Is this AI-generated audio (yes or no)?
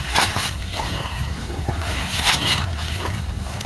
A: yes